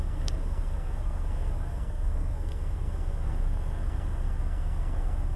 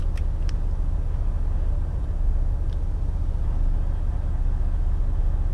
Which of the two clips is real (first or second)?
second